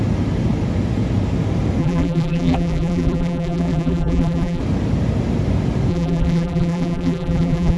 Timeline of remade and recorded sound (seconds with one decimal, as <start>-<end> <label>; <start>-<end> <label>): 0.0-1.8 recorded; 1.8-4.6 remade; 4.6-5.9 recorded; 5.9-7.8 remade